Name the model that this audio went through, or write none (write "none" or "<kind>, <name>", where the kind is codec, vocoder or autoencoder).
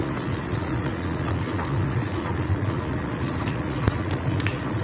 vocoder, Vocos